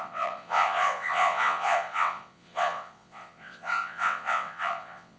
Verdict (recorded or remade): remade